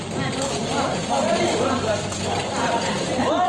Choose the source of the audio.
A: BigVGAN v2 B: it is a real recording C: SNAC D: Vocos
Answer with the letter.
A